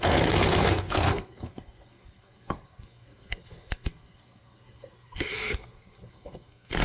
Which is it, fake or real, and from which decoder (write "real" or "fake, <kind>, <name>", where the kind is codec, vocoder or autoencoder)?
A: fake, codec, SNAC